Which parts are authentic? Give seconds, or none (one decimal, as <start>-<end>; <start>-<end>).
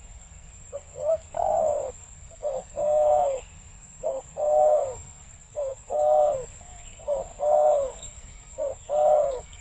none